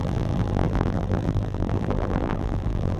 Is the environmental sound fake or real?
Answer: fake